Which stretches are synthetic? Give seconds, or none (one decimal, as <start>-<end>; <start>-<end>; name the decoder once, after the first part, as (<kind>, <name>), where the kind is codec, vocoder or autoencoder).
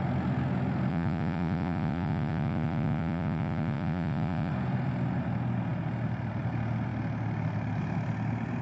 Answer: 0.9-4.5 (vocoder, Vocos)